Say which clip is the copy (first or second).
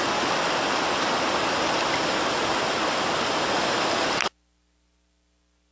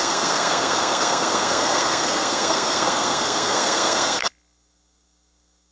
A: second